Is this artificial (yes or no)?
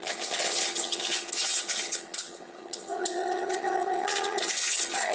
yes